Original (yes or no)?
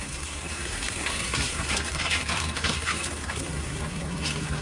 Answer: no